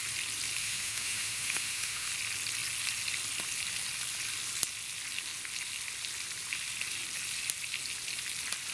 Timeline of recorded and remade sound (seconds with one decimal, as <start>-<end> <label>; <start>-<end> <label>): 0.0-0.6 recorded; 0.6-2.1 remade; 2.1-8.7 recorded